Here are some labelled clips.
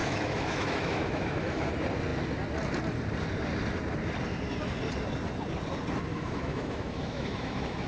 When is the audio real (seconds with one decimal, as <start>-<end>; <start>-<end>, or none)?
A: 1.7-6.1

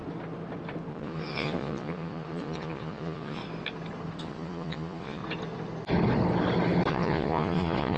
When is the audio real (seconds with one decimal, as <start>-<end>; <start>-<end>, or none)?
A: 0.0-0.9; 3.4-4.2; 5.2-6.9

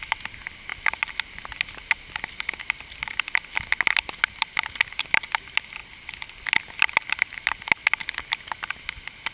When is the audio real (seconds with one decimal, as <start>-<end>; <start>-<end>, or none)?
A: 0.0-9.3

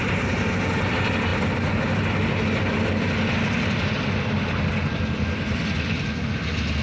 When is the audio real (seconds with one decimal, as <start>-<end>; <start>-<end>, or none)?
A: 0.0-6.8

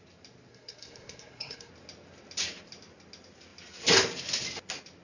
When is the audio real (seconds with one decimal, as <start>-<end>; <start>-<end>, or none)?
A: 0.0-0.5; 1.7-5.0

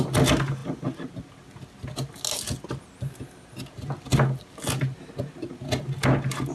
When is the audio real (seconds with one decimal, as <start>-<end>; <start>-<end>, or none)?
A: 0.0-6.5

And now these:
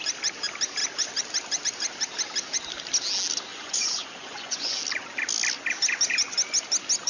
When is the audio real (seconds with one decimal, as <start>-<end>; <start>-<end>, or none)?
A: 0.0-3.5; 4.8-7.1